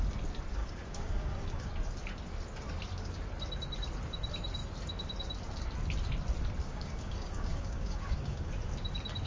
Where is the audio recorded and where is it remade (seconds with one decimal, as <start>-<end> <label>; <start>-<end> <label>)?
0.0-0.6 recorded; 0.6-1.7 remade; 1.7-6.6 recorded; 6.6-8.5 remade; 8.5-9.3 recorded